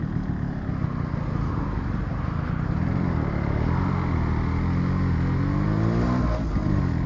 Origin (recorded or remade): recorded